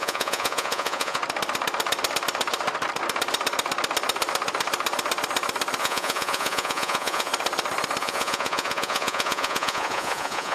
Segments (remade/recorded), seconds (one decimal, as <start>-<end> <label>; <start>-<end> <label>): 0.0-1.2 remade; 1.2-5.8 recorded; 5.8-7.3 remade; 7.3-8.0 recorded; 8.0-10.5 remade